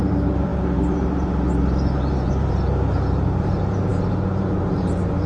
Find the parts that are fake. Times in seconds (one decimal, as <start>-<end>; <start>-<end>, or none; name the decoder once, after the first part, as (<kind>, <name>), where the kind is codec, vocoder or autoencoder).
0.0-5.3 (vocoder, BigVGAN v2)